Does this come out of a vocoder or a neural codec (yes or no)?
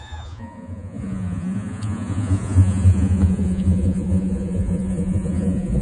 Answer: yes